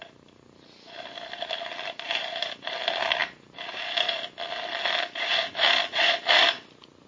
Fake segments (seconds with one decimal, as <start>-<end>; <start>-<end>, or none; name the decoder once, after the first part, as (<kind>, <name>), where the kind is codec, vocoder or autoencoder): none